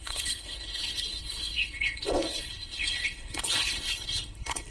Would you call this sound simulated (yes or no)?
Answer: yes